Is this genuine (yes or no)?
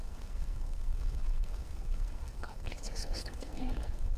no